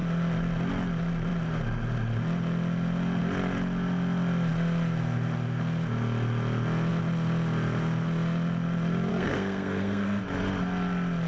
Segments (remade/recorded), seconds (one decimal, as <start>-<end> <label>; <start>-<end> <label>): 0.0-9.1 recorded; 9.1-10.2 remade; 10.2-11.3 recorded